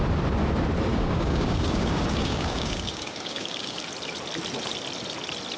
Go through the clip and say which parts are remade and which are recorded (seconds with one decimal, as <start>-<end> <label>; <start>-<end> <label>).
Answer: 0.0-0.9 recorded; 0.9-3.8 remade; 3.8-5.6 recorded